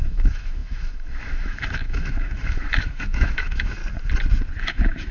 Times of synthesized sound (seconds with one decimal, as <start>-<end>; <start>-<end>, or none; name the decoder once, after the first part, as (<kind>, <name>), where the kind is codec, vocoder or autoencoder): 0.0-3.8 (autoencoder, DAC-VAE); 4.6-5.1